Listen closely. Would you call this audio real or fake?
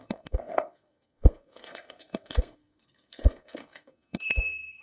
fake